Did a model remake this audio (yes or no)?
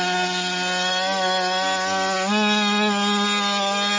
no